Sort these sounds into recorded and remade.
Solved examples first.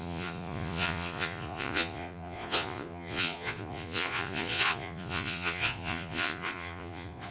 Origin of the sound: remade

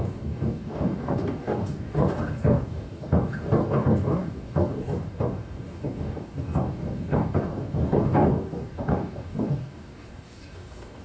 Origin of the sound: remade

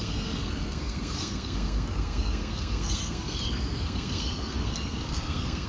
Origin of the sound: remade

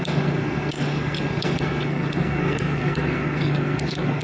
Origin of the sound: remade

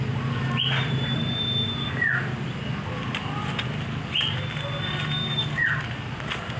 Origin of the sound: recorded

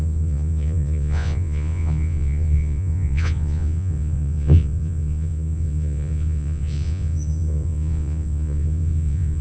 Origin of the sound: remade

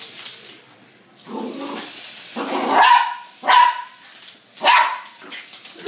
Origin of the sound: recorded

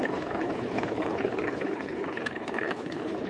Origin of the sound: remade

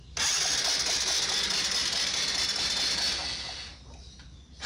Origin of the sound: recorded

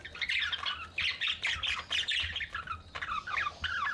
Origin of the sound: recorded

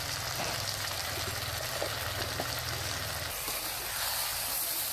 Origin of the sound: recorded